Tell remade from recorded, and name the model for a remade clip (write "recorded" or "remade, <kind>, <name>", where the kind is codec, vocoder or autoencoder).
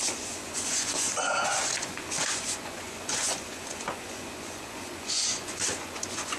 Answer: remade, vocoder, Vocos